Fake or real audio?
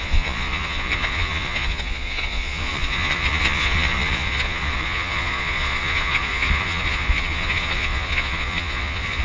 fake